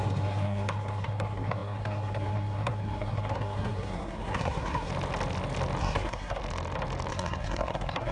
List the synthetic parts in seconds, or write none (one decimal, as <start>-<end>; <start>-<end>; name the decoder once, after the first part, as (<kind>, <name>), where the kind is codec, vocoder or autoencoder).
0.0-4.9 (codec, SNAC); 5.8-6.4; 7.1-8.1